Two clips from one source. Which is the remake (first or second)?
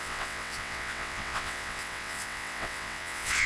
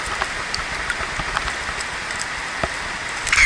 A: first